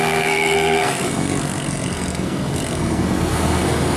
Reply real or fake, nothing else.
fake